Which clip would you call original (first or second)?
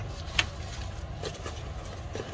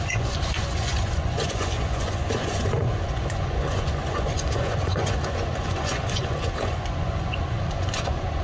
first